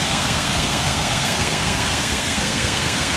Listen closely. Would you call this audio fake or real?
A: fake